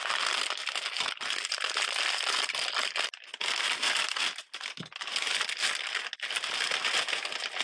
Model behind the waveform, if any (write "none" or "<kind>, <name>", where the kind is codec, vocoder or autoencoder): none